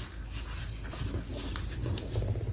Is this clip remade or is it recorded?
recorded